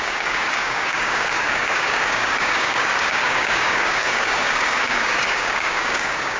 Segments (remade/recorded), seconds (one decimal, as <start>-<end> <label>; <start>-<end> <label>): 0.0-6.4 remade